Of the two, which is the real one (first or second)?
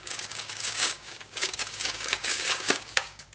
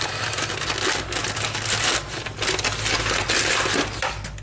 second